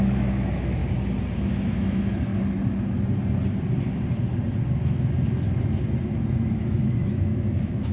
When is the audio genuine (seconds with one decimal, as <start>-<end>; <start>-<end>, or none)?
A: 0.8-1.4; 2.3-6.5